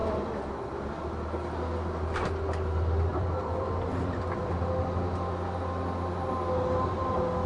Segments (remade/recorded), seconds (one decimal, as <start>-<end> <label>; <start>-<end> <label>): 0.0-0.9 remade; 0.9-3.1 recorded; 3.1-4.6 remade; 4.6-7.5 recorded